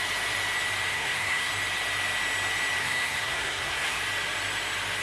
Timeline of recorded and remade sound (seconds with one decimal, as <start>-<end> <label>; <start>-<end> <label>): 0.0-0.9 recorded; 0.9-1.5 remade; 1.5-2.8 recorded; 2.8-4.0 remade; 4.0-5.0 recorded